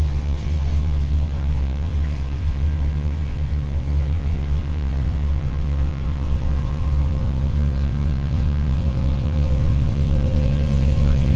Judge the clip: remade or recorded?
remade